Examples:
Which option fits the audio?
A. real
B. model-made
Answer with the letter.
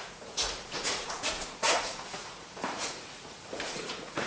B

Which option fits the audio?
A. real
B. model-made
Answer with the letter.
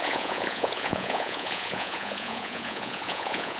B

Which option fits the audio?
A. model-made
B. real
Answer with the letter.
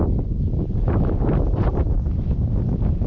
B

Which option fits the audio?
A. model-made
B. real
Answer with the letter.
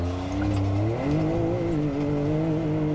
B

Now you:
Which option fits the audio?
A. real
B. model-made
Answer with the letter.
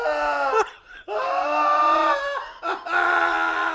A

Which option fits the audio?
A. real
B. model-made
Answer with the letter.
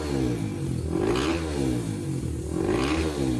A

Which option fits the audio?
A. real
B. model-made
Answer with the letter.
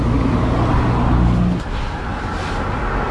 A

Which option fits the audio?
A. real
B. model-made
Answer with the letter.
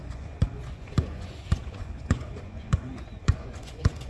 B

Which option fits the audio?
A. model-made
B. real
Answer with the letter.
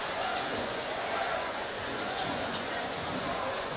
A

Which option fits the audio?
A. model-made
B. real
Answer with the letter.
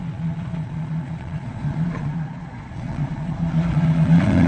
A